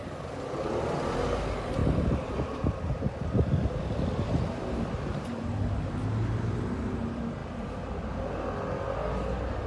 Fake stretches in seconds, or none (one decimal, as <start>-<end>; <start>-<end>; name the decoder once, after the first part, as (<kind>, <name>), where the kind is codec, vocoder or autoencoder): none